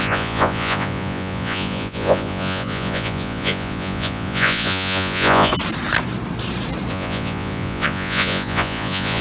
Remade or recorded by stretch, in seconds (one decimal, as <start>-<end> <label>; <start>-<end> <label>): 0.0-5.5 remade; 5.5-6.9 recorded; 6.9-9.2 remade